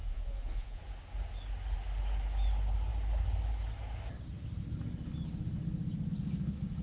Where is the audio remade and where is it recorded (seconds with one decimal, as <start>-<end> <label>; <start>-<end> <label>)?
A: 0.0-0.8 remade; 0.8-6.8 recorded